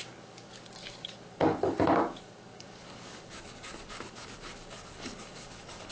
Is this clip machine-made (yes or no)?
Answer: yes